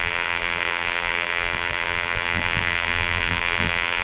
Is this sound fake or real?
fake